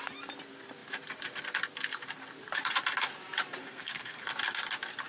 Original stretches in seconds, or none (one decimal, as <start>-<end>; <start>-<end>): 0.0-3.6; 4.2-5.1